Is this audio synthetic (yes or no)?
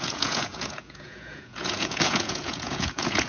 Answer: yes